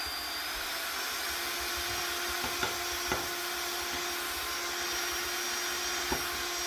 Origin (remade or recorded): recorded